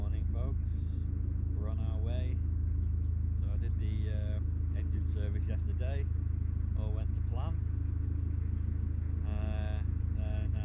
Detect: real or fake real